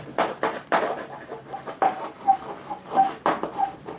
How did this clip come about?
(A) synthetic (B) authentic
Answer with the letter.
A